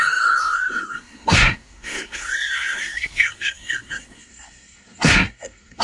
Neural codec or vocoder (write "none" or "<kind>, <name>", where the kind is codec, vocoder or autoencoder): codec, SNAC